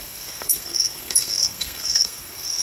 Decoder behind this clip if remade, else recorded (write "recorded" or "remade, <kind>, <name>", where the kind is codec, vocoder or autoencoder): remade, codec, SNAC